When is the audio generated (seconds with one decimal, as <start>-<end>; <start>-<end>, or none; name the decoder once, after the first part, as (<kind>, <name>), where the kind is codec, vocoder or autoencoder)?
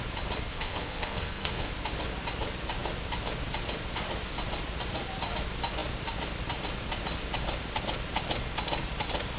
0.5-1.7 (codec, SNAC)